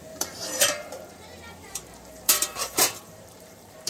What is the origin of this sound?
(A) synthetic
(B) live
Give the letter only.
A